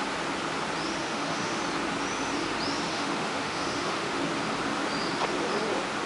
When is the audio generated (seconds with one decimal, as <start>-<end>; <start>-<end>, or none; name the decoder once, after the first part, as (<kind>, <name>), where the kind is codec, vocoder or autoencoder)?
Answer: 1.0-1.6 (autoencoder, DAC-VAE); 2.9-4.2